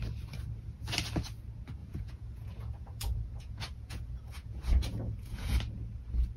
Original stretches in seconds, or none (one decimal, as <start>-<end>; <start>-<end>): 0.0-1.8; 5.6-6.4